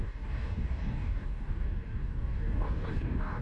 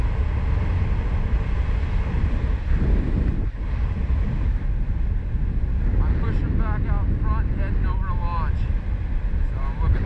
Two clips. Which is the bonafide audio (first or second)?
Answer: second